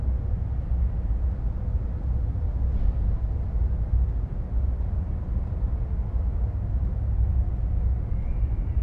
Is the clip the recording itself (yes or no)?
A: yes